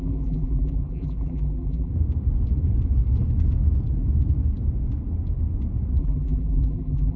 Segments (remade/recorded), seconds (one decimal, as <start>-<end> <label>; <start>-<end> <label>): 0.0-1.9 remade; 1.9-6.0 recorded; 6.0-7.2 remade